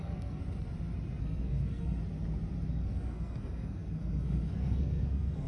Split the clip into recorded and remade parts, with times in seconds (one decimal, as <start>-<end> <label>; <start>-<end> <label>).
0.0-0.4 remade; 0.4-1.2 recorded; 1.2-2.0 remade; 2.0-2.7 recorded; 2.7-5.5 remade